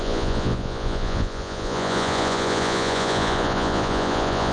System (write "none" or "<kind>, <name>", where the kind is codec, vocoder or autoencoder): vocoder, Vocos